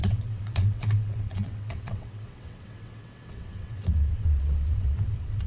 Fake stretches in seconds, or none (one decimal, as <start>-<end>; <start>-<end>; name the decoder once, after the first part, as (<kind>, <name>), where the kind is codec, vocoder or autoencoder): 0.0-5.5 (vocoder, WaveNeXt)